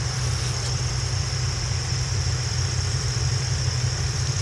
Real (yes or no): no